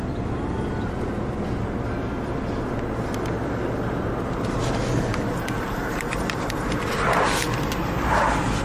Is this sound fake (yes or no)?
no